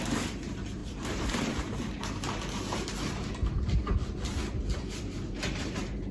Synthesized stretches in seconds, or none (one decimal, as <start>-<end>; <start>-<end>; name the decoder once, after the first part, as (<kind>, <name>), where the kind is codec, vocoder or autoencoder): 0.0-3.4 (vocoder, BigVGAN v2); 4.9-6.1